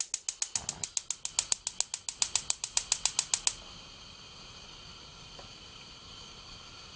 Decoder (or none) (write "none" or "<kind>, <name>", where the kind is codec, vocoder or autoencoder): none